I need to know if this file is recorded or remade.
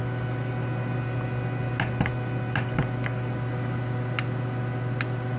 recorded